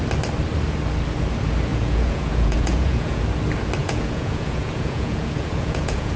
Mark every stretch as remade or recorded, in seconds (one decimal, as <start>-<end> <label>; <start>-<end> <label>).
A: 0.0-1.7 recorded; 1.7-3.2 remade; 3.2-3.8 recorded; 3.8-6.2 remade